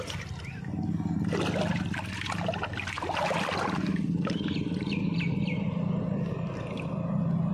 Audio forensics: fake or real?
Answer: real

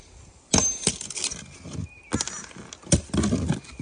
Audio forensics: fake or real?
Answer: real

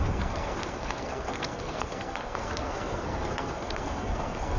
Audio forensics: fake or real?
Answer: fake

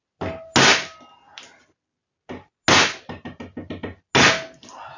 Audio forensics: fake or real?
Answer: real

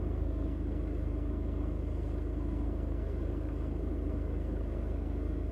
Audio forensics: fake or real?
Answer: fake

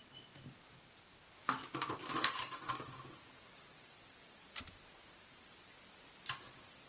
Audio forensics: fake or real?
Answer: real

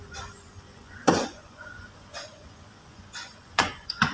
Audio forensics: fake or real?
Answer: fake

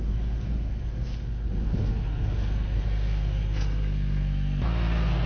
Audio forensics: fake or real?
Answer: fake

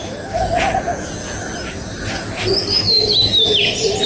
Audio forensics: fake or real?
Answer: real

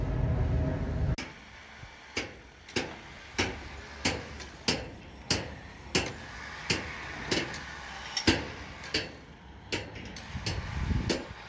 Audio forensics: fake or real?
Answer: real